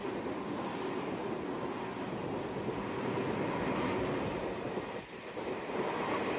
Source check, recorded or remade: recorded